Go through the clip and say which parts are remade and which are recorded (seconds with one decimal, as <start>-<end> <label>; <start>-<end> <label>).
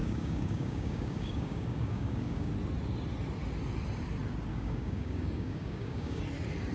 0.0-2.5 remade; 2.5-4.5 recorded; 4.5-6.2 remade; 6.2-6.7 recorded